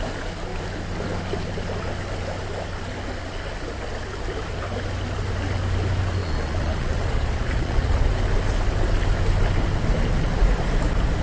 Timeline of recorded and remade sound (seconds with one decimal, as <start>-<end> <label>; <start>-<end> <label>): 0.0-6.2 recorded; 6.2-8.1 remade; 8.1-11.2 recorded